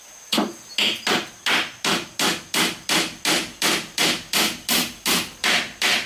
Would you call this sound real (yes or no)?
yes